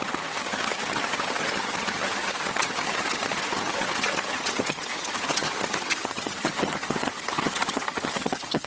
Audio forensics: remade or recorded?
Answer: remade